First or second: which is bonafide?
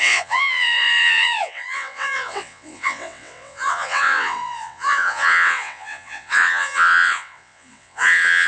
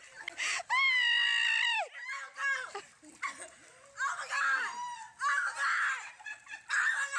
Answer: second